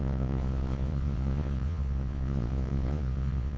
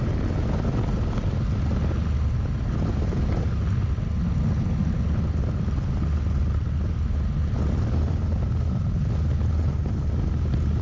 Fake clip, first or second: first